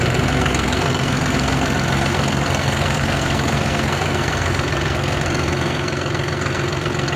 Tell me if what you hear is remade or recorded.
remade